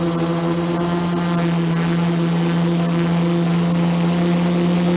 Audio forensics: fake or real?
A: real